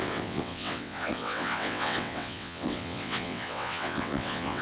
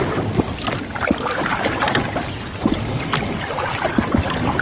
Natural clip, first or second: second